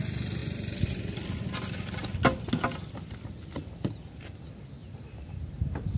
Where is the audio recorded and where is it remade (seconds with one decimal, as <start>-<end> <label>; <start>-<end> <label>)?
0.0-4.8 recorded; 4.8-6.0 remade